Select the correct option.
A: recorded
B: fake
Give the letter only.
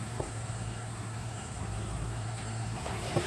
B